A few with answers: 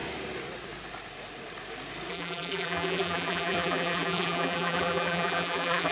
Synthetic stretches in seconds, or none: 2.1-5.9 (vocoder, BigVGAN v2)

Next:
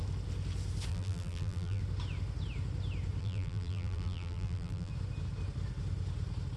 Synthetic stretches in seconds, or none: 0.9-1.8 (vocoder, BigVGAN v2); 3.2-4.9

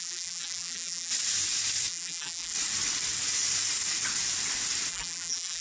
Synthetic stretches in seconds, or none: 0.0-1.1 (vocoder, BigVGAN v2); 1.9-2.5; 4.9-5.6

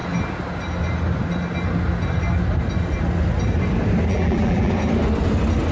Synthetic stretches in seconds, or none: 4.1-4.7 (vocoder, BigVGAN v2)

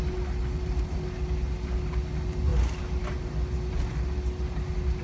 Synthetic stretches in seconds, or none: none

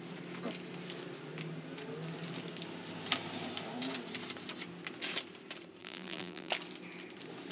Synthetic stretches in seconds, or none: 5.8-6.5 (vocoder, BigVGAN v2)

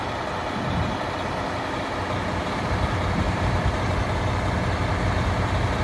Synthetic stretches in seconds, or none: none

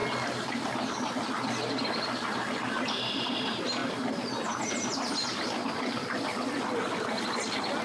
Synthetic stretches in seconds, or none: none